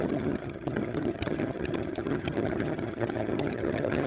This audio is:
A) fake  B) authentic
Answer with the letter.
A